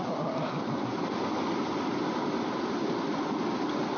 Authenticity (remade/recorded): recorded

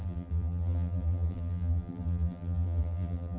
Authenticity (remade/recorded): remade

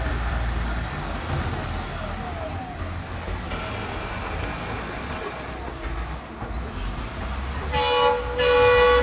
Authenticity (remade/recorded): recorded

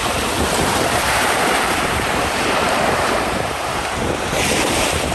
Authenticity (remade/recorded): remade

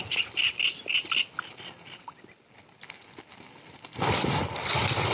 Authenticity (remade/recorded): recorded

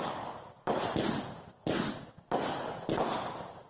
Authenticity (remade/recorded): recorded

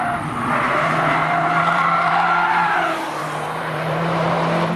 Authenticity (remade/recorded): remade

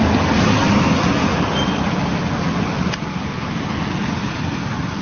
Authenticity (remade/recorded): recorded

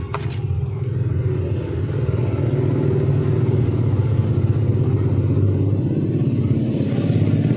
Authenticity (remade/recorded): recorded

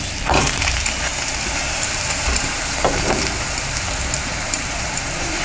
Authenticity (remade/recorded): remade